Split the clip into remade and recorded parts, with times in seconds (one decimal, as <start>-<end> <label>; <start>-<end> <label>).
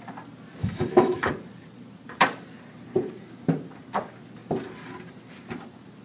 0.0-0.6 recorded; 0.6-1.3 remade; 1.3-6.0 recorded